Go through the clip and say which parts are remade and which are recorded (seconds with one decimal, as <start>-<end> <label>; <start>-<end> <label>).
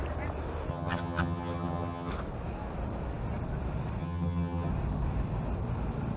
0.0-0.7 recorded; 0.7-2.1 remade; 2.1-4.0 recorded; 4.0-4.7 remade; 4.7-6.2 recorded